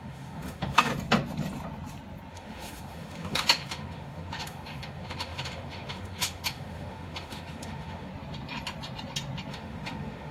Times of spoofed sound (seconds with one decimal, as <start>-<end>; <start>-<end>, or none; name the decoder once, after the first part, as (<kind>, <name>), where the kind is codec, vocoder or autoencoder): 0.0-0.9 (autoencoder, DAC-VAE); 2.3-8.1; 9.5-10.3